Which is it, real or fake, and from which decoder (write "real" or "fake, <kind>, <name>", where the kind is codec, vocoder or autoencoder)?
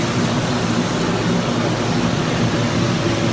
real